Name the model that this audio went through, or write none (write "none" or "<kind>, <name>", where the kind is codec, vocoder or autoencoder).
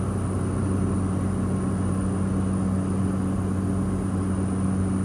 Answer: none